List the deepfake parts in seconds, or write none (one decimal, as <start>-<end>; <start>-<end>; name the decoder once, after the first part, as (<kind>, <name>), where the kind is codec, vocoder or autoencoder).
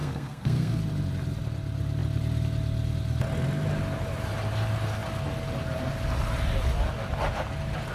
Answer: 0.0-0.8 (codec, SNAC)